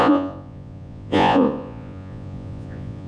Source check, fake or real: fake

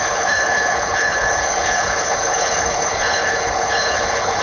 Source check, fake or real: fake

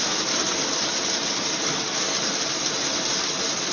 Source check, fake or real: real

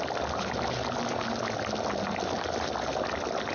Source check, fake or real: real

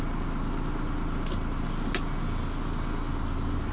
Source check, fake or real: real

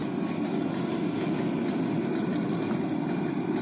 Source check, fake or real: real